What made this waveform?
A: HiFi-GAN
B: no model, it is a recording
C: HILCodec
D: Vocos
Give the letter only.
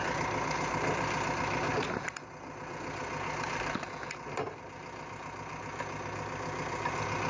B